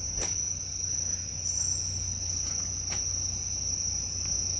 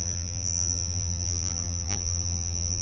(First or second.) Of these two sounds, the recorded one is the first